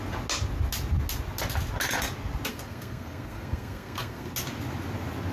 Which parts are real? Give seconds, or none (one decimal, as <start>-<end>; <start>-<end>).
0.0-2.5; 4.3-5.3